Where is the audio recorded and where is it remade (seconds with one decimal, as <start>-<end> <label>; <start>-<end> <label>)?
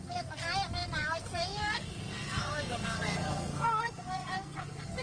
0.0-5.0 remade